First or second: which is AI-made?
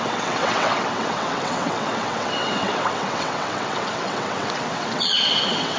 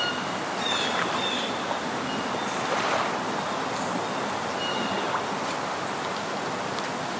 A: first